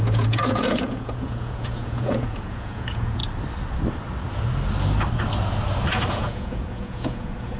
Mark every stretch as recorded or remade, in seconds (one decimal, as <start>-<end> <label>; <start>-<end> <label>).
0.0-3.2 remade; 3.2-6.1 recorded; 6.1-7.6 remade